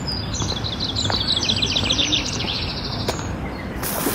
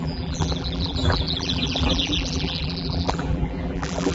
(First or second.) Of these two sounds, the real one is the first